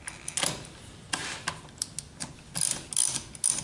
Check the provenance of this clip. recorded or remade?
recorded